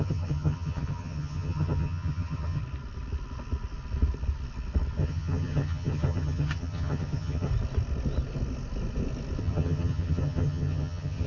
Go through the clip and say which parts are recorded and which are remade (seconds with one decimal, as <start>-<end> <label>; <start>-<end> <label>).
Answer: 0.0-2.6 remade; 2.6-5.0 recorded; 5.0-7.5 remade; 7.5-9.4 recorded; 9.4-11.3 remade